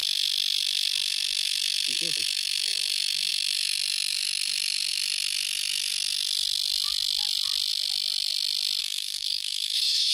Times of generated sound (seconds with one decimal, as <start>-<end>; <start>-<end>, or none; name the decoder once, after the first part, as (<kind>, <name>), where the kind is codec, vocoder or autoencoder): 8.8-10.1 (codec, DAC)